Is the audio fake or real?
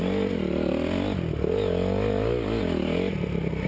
real